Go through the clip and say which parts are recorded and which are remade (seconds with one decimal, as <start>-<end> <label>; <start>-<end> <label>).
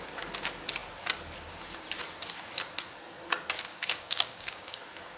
0.0-3.7 recorded; 3.7-4.8 remade; 4.8-5.2 recorded